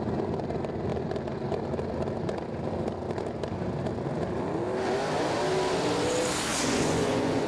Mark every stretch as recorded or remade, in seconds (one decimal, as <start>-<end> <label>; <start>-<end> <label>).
0.0-6.5 recorded; 6.5-7.5 remade